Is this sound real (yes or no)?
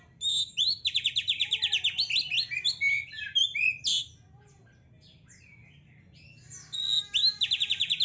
yes